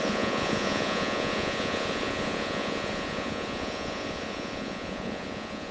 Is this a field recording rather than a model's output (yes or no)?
no